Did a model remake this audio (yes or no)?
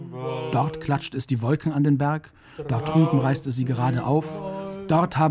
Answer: no